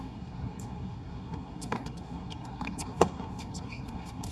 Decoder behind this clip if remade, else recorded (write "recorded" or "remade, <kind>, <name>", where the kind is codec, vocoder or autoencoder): remade, codec, SNAC